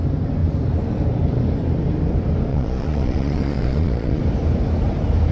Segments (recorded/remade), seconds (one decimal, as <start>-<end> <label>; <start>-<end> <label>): 0.0-2.5 recorded; 2.5-4.2 remade; 4.2-5.3 recorded